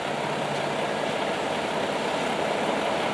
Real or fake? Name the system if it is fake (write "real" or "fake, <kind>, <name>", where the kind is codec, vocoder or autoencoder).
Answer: real